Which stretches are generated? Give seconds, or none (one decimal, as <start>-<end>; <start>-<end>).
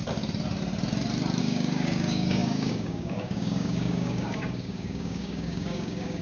1.4-6.2